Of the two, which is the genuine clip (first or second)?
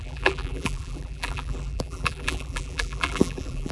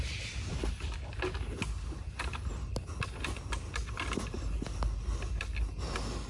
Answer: second